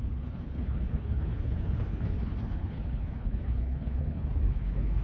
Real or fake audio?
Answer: fake